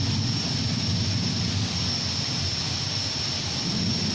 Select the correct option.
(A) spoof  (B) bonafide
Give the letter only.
B